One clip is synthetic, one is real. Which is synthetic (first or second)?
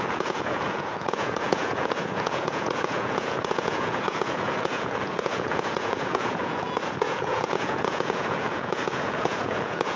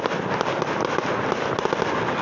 first